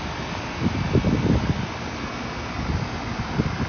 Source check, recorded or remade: recorded